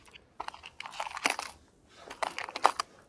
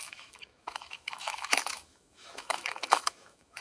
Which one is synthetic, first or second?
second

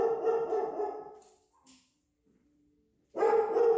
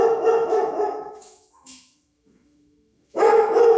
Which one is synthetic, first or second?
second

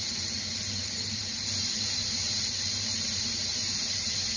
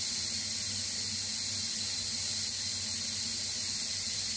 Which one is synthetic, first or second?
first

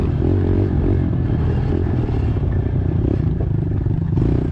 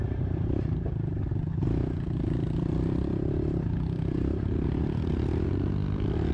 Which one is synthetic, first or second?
second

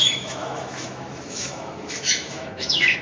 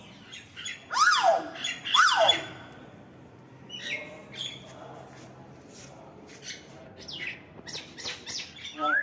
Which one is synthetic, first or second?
first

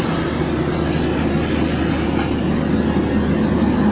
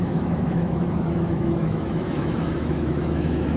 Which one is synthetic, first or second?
second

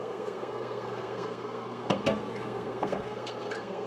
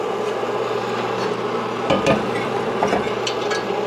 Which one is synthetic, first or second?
first